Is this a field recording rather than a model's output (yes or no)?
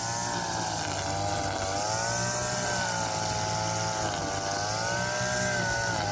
yes